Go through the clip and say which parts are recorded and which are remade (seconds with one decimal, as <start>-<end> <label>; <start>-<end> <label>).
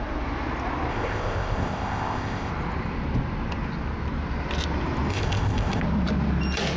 0.0-0.9 recorded; 0.9-2.5 remade; 2.5-5.1 recorded; 5.1-5.8 remade; 5.8-6.8 recorded